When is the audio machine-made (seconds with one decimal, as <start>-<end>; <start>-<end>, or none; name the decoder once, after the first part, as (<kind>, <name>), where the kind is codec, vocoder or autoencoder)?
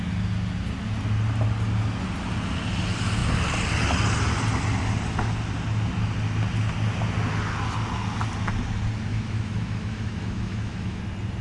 9.1-11.0 (autoencoder, DAC-VAE)